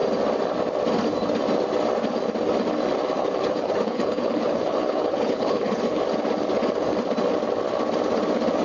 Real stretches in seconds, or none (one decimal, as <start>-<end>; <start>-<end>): 0.0-3.2; 6.0-8.6